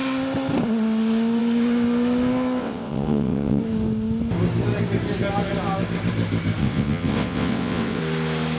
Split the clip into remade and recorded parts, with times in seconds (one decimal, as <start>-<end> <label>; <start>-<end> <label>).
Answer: 0.0-2.6 recorded; 2.6-3.6 remade; 3.6-6.6 recorded; 6.6-8.0 remade; 8.0-8.6 recorded